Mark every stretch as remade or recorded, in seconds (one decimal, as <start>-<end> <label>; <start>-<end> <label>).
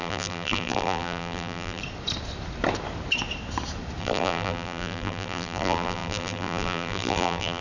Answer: 0.0-1.8 remade; 1.8-4.0 recorded; 4.0-7.6 remade